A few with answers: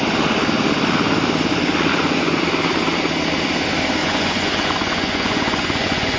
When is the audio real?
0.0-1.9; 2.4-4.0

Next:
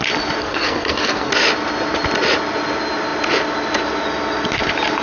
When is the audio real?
0.0-0.4; 1.3-5.0

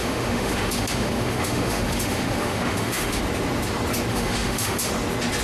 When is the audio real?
3.2-4.1; 4.9-5.4

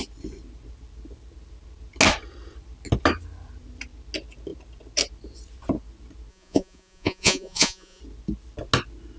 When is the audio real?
0.0-6.3; 8.0-9.2

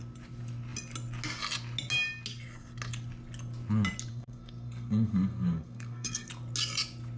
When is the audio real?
0.0-4.1; 6.3-7.2

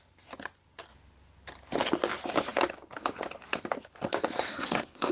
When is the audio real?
0.0-4.5